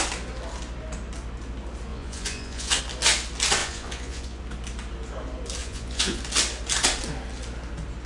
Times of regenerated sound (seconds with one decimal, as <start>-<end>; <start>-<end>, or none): 1.9-2.8; 3.6-4.4; 5.6-6.2